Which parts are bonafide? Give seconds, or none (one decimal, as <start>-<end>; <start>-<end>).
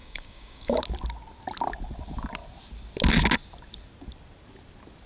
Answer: 0.8-5.1